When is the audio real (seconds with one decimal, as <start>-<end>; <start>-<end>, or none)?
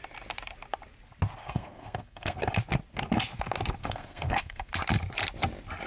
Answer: 0.0-1.4; 2.5-3.8; 4.7-5.9